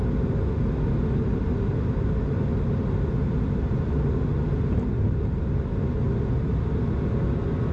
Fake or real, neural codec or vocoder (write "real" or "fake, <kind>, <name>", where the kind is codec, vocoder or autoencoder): real